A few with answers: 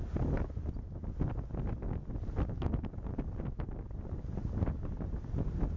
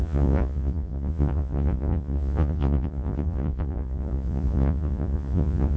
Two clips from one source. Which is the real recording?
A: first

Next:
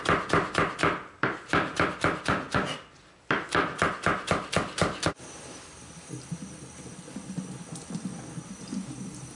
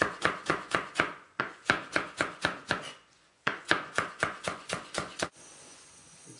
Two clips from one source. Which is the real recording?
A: first